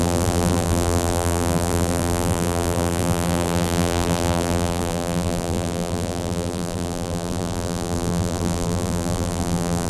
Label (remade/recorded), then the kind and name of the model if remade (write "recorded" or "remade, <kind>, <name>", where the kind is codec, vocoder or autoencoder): remade, vocoder, BigVGAN v2